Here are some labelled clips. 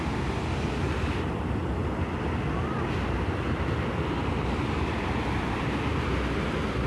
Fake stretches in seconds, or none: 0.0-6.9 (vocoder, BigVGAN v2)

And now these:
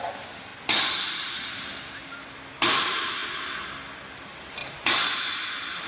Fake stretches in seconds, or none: 0.0-0.5 (vocoder, BigVGAN v2); 2.3-3.2; 4.1-5.9